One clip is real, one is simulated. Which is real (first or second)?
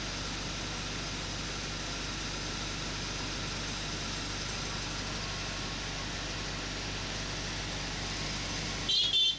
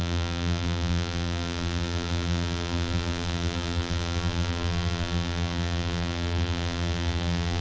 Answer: first